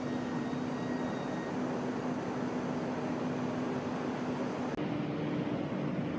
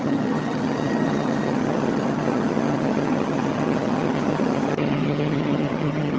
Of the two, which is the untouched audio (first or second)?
first